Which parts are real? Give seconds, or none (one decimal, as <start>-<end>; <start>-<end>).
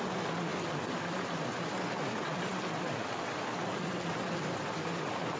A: 0.0-5.4